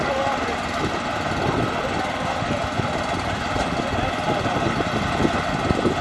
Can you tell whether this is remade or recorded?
recorded